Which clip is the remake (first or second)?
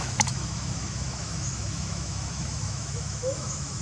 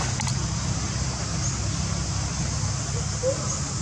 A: first